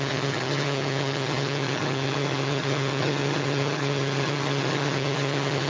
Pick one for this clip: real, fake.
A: fake